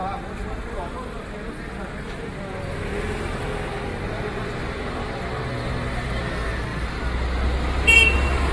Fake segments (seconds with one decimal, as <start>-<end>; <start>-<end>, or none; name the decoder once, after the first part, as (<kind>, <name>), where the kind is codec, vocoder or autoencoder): 0.0-1.3 (vocoder, BigVGAN v2); 3.9-6.2